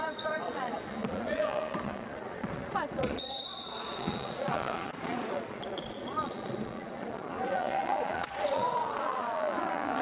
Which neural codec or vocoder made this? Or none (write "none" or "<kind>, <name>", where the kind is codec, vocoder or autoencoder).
vocoder, Vocos